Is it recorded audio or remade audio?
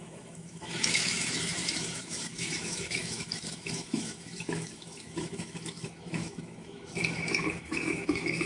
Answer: remade